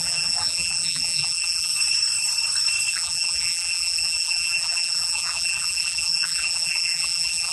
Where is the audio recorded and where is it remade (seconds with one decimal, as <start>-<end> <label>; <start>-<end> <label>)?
0.0-1.7 remade; 1.7-2.9 recorded; 2.9-7.5 remade